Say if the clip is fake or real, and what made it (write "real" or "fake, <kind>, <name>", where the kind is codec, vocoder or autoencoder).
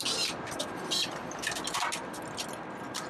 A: real